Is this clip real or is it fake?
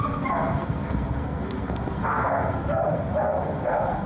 fake